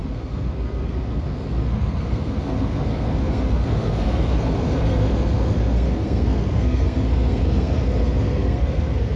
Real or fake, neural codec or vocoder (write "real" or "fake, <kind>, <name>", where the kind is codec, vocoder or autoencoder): fake, codec, SNAC